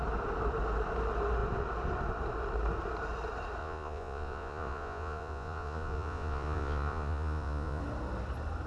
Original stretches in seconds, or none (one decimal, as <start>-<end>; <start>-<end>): 0.0-3.6; 7.8-8.7